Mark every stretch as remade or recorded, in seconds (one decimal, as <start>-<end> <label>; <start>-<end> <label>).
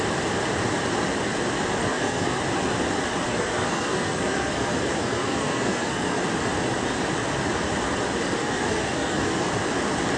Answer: 0.0-1.8 recorded; 1.8-2.4 remade; 2.4-3.3 recorded; 3.3-6.2 remade; 6.2-8.4 recorded; 8.4-9.5 remade; 9.5-10.2 recorded